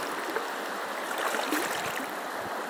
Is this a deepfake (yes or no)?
no